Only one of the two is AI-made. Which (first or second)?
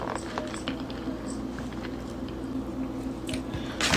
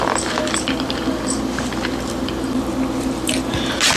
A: second